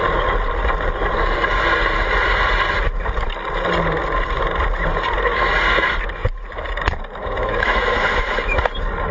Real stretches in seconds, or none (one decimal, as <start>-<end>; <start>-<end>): 0.0-7.2; 8.6-9.1